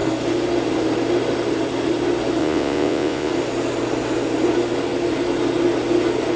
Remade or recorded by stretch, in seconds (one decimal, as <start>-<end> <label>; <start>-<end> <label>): 0.0-2.4 recorded; 2.4-3.3 remade; 3.3-6.4 recorded

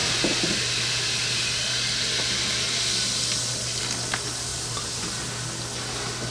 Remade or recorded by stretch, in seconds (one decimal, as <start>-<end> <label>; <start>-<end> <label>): 0.0-4.5 recorded; 4.5-5.2 remade; 5.2-6.3 recorded

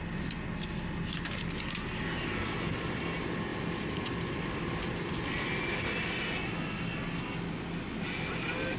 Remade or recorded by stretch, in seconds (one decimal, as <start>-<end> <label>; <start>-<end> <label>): 0.0-8.8 recorded